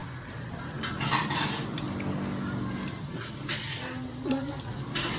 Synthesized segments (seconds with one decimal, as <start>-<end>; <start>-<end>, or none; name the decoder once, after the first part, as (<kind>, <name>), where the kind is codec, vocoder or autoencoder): none